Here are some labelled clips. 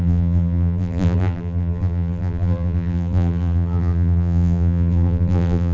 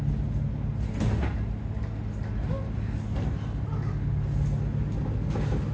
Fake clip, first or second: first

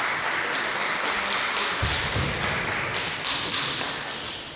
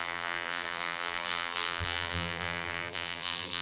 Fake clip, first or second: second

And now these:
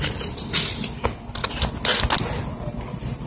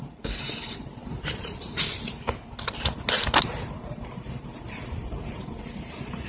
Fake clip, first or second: second